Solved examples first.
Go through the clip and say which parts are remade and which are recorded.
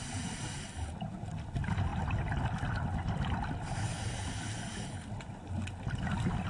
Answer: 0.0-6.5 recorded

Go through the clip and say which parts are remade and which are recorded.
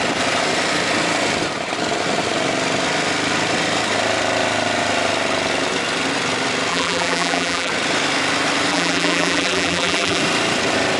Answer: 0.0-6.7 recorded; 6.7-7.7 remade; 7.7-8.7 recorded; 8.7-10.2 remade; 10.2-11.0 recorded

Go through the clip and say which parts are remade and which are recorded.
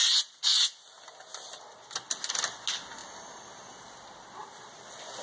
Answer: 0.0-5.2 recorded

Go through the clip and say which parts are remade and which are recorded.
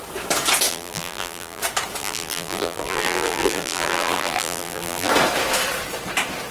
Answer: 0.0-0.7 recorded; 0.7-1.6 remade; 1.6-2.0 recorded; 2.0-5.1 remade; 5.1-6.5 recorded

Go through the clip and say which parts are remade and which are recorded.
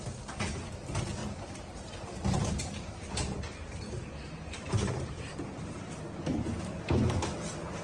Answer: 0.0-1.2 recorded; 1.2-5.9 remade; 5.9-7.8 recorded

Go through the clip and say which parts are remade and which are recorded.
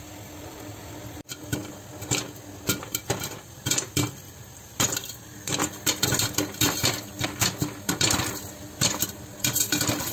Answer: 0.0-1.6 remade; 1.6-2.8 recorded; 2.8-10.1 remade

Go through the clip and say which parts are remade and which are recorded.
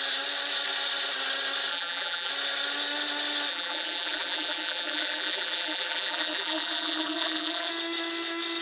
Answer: 0.0-1.7 recorded; 1.7-2.3 remade; 2.3-3.5 recorded; 3.5-7.7 remade; 7.7-8.6 recorded